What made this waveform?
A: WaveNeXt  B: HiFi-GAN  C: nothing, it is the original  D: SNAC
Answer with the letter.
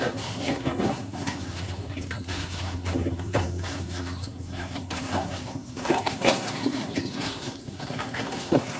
D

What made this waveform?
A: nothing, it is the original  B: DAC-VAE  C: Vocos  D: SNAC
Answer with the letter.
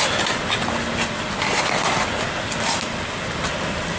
A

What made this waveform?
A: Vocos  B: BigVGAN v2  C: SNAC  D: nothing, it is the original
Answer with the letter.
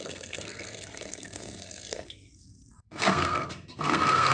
C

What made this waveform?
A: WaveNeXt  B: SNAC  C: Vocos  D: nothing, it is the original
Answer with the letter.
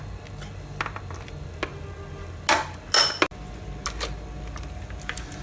D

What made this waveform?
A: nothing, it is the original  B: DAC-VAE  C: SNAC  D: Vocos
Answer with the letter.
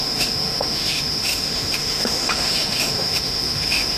B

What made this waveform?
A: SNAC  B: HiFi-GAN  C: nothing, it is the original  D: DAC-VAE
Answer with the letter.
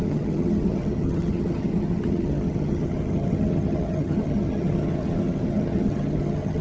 B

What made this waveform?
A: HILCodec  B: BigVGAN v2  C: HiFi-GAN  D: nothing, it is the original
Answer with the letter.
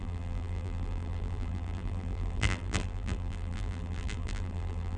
B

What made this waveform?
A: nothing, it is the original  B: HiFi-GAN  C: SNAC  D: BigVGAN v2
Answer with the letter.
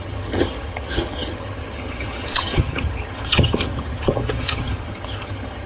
B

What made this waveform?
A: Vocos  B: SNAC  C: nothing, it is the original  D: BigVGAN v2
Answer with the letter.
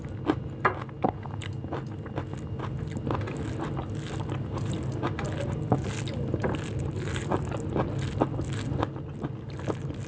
C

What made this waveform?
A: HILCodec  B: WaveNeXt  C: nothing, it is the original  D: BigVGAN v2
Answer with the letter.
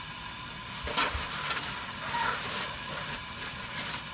C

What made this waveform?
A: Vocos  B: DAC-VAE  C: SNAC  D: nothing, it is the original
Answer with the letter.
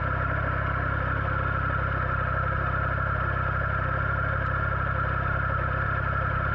D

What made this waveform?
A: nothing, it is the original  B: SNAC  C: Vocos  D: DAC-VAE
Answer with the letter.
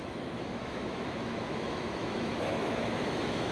D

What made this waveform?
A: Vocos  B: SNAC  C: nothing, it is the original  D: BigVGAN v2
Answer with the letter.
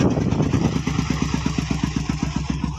C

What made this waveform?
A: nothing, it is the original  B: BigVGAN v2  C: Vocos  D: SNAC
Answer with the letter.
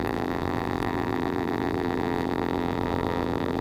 B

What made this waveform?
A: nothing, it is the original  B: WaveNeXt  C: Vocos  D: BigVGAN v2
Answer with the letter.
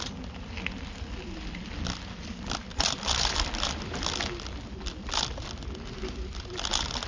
A